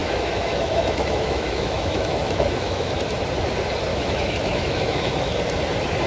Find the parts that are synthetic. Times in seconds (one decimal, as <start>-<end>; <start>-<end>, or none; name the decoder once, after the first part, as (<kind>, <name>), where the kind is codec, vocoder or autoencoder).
0.0-2.9 (autoencoder, DAC-VAE); 3.9-5.4